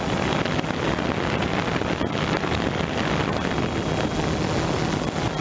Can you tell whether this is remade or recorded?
recorded